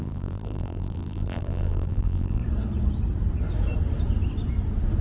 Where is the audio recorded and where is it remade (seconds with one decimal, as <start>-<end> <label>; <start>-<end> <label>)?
0.0-2.4 remade; 2.4-5.0 recorded